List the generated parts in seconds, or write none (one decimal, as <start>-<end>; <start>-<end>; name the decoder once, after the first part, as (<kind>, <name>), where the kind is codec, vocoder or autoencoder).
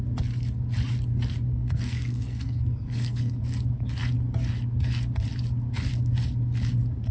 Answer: 1.5-3.4 (codec, SNAC)